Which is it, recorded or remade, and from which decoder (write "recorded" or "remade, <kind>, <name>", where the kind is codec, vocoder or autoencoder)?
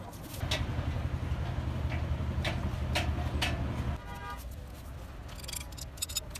recorded